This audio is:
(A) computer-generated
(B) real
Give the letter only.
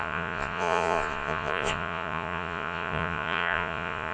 A